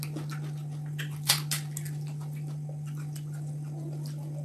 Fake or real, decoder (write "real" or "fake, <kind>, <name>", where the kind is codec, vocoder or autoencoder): real